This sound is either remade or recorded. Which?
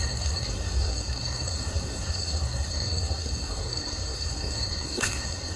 remade